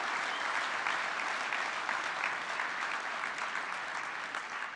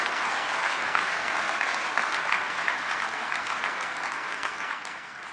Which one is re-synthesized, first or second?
second